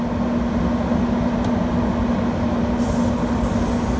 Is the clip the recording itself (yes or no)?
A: yes